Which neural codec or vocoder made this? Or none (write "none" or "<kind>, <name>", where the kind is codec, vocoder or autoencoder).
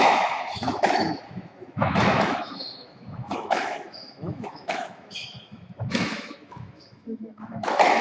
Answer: autoencoder, DAC-VAE